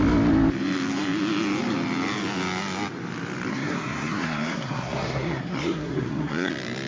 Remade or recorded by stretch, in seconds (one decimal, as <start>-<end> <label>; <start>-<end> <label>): 0.0-3.5 recorded; 3.5-6.5 remade; 6.5-6.9 recorded